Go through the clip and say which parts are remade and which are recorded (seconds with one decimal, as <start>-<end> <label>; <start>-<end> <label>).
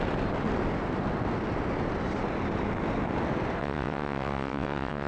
0.0-3.6 recorded; 3.6-5.1 remade